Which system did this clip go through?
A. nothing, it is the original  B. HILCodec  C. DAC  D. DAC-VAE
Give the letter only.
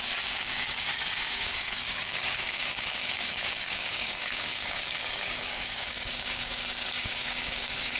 C